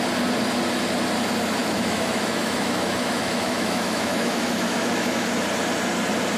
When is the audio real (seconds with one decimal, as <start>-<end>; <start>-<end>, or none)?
0.0-1.6; 5.3-6.4